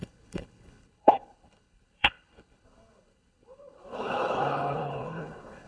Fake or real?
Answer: fake